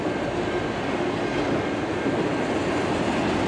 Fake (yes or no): no